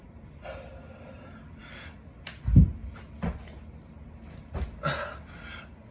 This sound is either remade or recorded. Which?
recorded